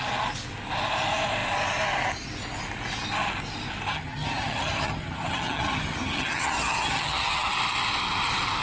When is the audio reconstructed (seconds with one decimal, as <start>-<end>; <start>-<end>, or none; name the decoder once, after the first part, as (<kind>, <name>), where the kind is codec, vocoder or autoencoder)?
3.9-7.5 (vocoder, HiFi-GAN)